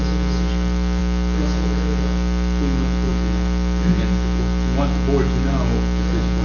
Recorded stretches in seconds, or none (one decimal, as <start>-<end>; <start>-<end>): 0.0-6.4